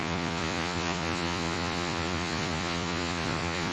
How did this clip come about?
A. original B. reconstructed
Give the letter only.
B